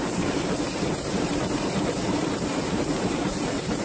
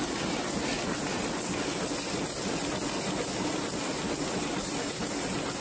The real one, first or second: second